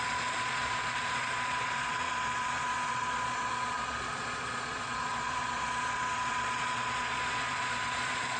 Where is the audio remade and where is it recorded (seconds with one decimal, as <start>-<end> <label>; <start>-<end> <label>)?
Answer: 0.0-8.4 remade